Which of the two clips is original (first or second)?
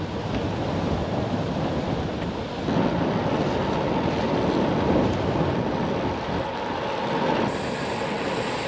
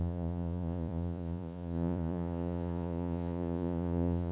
first